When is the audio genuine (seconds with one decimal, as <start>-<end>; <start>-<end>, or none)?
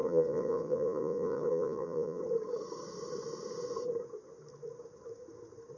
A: 2.2-5.8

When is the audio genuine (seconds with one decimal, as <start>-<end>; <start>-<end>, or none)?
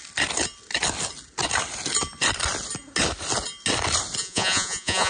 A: 0.0-4.2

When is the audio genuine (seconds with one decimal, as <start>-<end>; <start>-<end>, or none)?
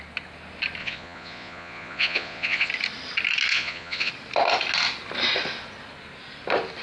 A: 0.0-0.8; 2.7-3.5; 4.1-6.8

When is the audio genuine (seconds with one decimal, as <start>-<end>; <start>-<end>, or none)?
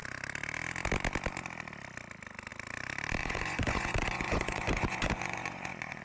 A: 0.0-3.2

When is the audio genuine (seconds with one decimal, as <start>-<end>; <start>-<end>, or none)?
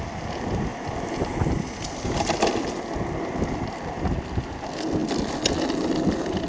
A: 0.0-6.5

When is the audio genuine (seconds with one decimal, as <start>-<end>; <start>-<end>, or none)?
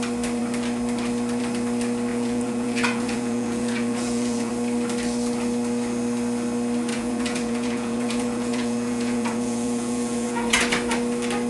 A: 0.0-2.1; 4.5-6.9; 10.6-11.5